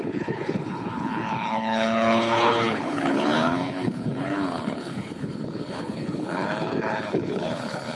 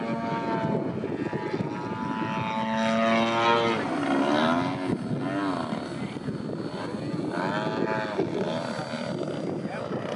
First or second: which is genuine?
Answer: second